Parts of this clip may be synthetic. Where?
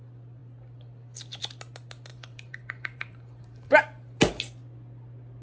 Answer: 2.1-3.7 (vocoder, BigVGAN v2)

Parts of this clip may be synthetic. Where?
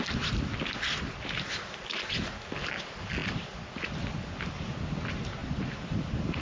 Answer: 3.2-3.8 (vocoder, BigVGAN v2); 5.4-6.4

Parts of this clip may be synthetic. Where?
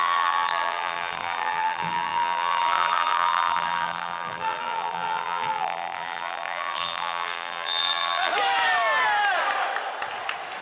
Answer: 0.0-8.3 (vocoder, BigVGAN v2)